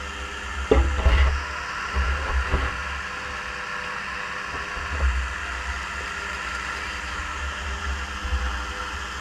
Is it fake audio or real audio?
real